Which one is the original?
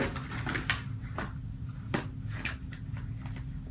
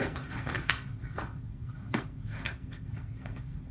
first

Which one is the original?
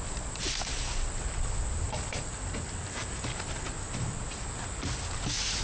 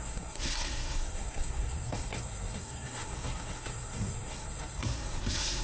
first